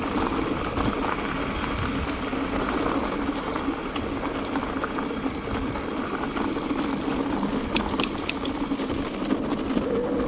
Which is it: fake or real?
real